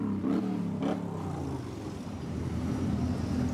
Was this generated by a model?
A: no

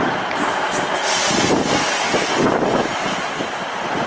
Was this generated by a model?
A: no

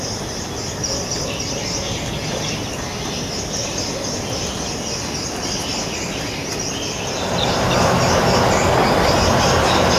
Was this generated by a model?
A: no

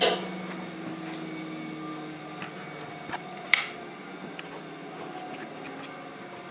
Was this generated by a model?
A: no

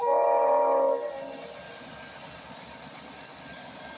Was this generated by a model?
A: no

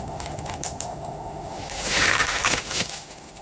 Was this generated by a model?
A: yes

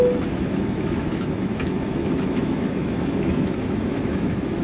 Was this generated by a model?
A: yes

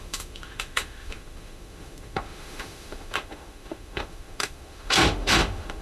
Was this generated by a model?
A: yes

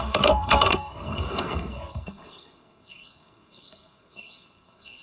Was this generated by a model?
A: yes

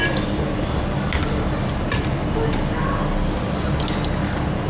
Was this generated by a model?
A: no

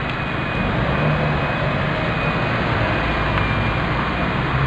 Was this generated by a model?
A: no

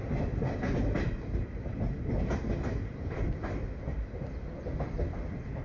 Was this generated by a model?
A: no